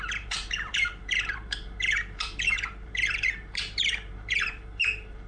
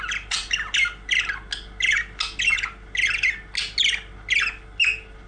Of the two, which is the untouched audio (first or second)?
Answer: second